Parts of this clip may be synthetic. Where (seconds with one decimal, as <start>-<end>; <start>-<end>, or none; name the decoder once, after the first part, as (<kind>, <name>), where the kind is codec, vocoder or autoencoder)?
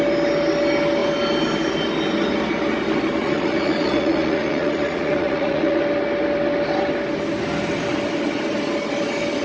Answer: 3.2-5.8 (vocoder, Vocos)